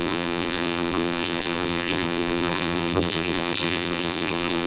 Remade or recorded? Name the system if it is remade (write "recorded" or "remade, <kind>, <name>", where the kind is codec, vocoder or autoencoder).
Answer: remade, vocoder, BigVGAN v2